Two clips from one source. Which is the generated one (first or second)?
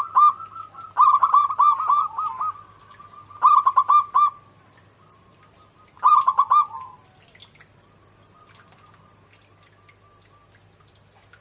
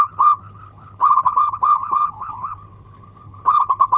second